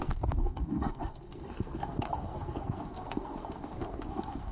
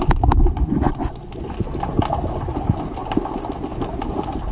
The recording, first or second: second